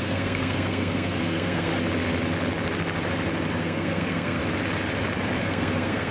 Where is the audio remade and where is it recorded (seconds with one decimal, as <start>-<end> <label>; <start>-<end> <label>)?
0.0-1.7 remade; 1.7-3.6 recorded; 3.6-4.4 remade; 4.4-5.4 recorded; 5.4-6.1 remade